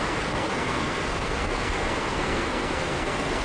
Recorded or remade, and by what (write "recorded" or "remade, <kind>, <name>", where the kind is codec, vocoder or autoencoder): remade, codec, SNAC